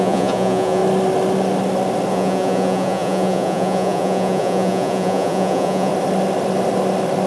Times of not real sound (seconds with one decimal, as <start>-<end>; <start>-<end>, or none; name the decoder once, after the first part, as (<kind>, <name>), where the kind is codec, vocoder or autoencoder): 0.0-0.8 (vocoder, Vocos); 2.1-5.9